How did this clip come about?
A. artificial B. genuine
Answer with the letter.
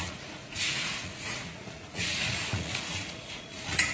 A